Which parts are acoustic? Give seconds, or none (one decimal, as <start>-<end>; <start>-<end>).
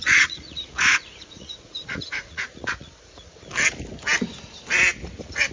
3.3-5.5